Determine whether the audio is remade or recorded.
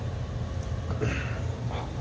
recorded